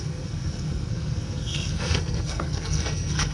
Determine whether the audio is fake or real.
fake